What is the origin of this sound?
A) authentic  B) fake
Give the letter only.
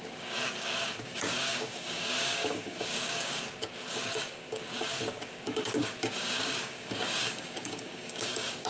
B